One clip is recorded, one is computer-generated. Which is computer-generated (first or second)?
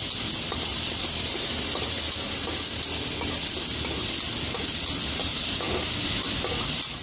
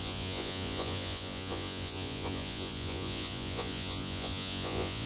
second